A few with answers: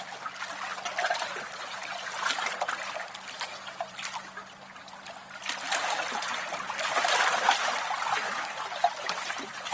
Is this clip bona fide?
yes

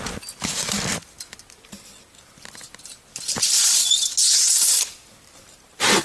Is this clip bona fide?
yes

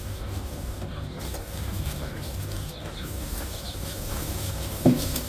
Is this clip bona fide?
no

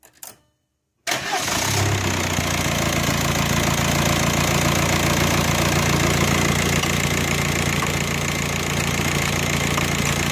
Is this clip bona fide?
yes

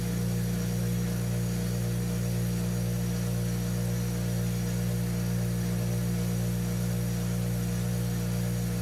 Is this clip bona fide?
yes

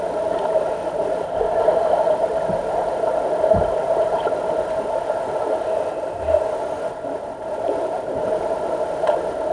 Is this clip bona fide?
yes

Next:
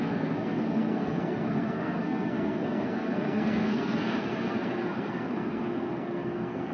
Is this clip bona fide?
no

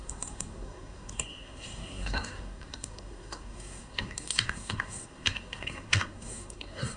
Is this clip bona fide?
no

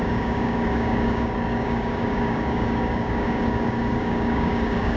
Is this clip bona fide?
no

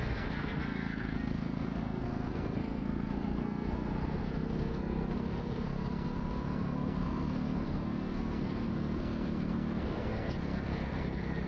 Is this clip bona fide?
no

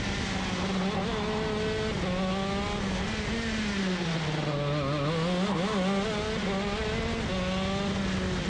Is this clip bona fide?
yes